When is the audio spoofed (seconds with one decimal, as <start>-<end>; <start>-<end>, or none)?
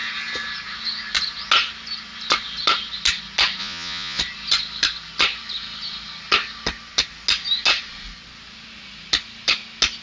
3.6-4.2